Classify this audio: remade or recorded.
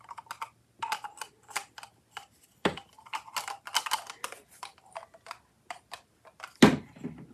recorded